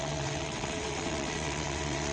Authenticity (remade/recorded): remade